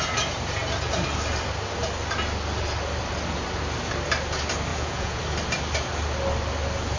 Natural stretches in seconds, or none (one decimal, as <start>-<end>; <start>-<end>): 0.0-4.7; 5.2-7.0